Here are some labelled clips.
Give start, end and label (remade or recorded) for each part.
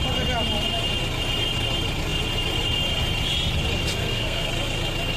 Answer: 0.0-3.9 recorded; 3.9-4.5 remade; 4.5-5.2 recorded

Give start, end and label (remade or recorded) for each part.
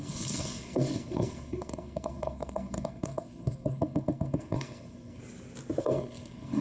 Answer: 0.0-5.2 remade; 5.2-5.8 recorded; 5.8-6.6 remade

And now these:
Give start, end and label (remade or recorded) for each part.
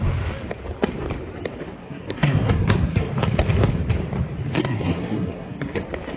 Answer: 0.0-1.8 recorded; 1.8-3.1 remade; 3.1-4.6 recorded; 4.6-5.8 remade; 5.8-6.2 recorded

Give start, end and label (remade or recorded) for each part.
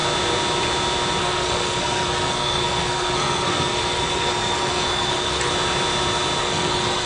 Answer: 0.0-1.2 recorded; 1.2-5.5 remade; 5.5-6.4 recorded; 6.4-7.1 remade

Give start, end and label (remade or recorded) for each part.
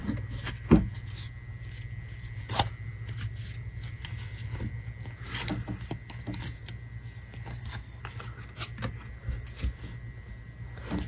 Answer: 0.0-7.5 recorded; 7.5-8.0 remade; 8.0-11.1 recorded